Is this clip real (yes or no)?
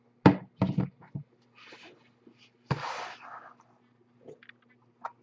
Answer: yes